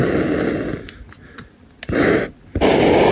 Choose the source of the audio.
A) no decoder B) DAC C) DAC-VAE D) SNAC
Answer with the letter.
A